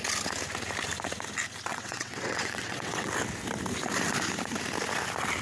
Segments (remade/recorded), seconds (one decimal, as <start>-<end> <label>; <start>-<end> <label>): 0.0-1.7 recorded; 1.7-3.1 remade; 3.1-5.4 recorded

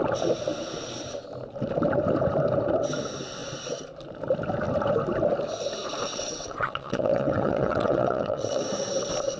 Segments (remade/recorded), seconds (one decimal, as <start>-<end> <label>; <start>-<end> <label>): 0.0-6.1 recorded; 6.1-8.6 remade; 8.6-9.4 recorded

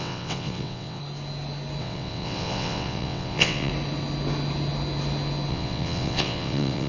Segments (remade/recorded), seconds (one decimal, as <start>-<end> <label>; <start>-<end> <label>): 0.0-1.0 remade; 1.0-1.8 recorded; 1.8-3.7 remade; 3.7-5.5 recorded; 5.5-6.9 remade

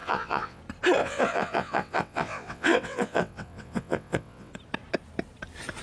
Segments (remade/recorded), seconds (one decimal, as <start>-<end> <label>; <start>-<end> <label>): 0.0-0.6 remade; 0.6-1.0 recorded; 1.0-4.5 remade; 4.5-5.8 recorded

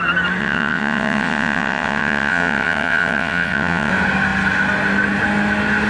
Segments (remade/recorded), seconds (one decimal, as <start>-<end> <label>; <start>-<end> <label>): 0.0-0.4 recorded; 0.4-3.9 remade; 3.9-5.9 recorded